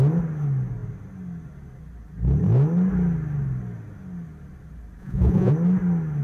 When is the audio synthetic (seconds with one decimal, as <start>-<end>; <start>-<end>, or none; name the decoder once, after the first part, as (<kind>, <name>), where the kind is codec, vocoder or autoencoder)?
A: 5.0-5.5 (vocoder, Vocos)